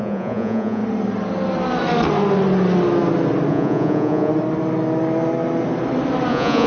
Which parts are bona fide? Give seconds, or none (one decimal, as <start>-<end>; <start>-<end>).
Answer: 0.8-3.5; 4.3-6.3